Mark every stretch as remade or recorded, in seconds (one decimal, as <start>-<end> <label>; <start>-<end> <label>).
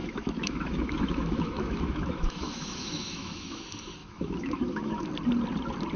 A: 0.0-3.6 remade; 3.6-4.0 recorded; 4.0-5.1 remade; 5.1-6.0 recorded